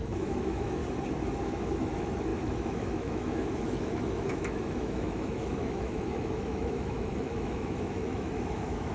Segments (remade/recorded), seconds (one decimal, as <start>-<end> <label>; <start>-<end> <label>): 0.0-0.8 remade; 0.8-1.4 recorded; 1.4-8.9 remade